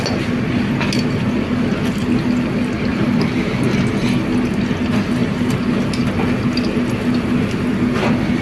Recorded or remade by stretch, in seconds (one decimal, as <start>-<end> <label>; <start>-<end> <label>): 0.0-2.9 recorded; 2.9-3.9 remade; 3.9-8.4 recorded